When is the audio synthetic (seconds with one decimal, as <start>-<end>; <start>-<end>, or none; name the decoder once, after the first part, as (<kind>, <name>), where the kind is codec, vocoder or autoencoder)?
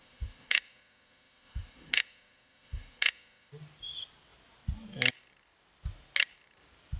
0.0-3.5 (autoencoder, DAC-VAE)